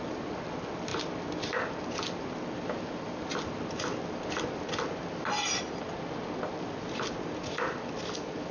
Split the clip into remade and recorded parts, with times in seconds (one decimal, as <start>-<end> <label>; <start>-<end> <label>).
0.0-8.5 recorded